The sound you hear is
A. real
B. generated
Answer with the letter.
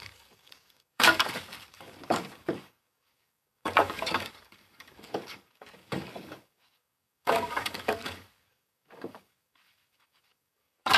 B